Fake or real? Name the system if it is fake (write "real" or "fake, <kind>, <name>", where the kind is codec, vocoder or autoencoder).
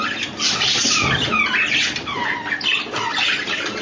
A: real